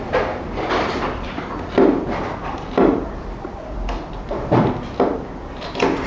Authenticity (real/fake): fake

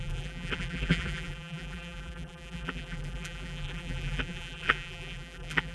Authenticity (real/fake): fake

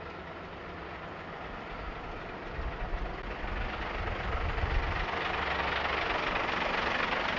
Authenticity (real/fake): real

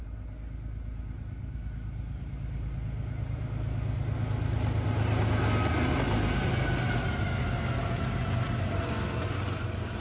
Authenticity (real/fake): real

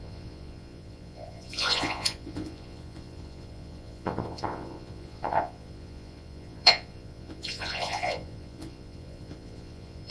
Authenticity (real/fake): fake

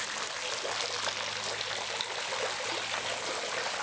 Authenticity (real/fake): real